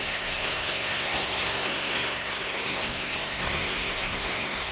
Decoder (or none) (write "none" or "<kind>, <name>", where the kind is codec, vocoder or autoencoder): codec, SNAC